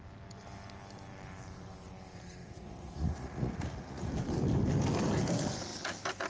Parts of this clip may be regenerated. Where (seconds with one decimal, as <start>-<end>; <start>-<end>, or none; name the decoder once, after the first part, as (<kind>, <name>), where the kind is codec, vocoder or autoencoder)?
2.4-4.1 (vocoder, Vocos)